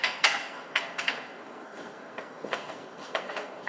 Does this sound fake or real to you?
fake